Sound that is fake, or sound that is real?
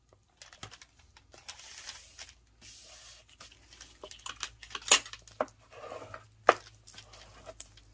real